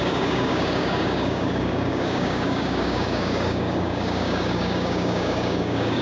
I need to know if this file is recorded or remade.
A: remade